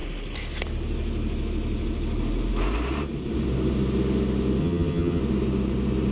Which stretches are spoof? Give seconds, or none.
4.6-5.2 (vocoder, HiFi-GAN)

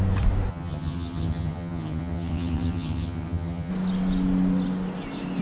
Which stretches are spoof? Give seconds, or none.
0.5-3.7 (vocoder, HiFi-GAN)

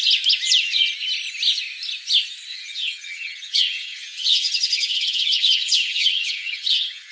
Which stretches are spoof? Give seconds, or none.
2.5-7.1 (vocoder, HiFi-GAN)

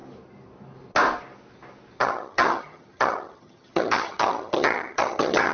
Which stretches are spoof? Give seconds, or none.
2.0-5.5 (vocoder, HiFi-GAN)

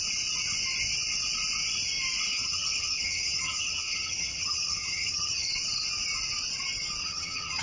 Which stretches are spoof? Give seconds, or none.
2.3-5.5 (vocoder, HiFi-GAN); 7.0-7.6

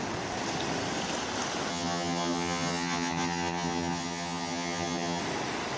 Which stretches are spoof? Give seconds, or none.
1.7-5.2 (vocoder, HiFi-GAN)

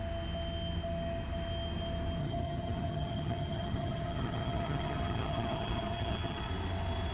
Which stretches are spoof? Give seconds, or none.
2.2-6.5 (vocoder, HiFi-GAN)